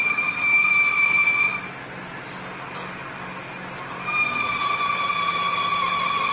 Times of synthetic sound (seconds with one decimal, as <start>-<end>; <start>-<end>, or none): none